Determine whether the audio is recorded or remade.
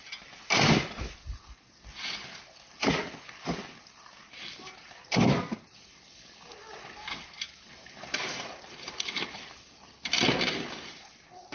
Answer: recorded